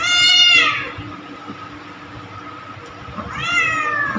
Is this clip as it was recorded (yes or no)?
yes